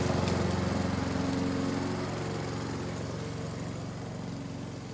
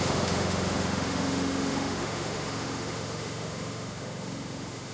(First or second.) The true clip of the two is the first